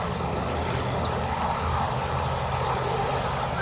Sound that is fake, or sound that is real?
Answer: real